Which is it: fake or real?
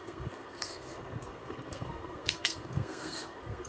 fake